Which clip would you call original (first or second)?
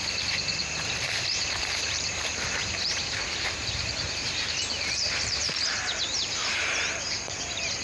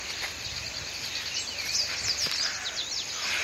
second